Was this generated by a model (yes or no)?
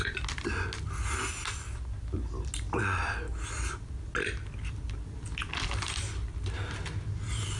no